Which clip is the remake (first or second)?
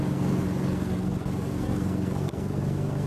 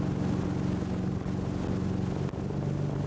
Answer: first